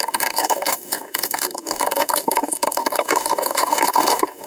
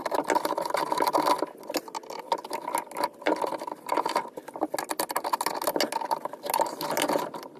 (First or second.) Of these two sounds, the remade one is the first